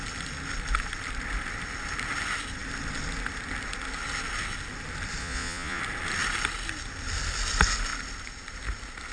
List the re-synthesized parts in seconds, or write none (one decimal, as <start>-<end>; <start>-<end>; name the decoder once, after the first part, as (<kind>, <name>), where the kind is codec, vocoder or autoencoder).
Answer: 5.2-5.8 (vocoder, Vocos)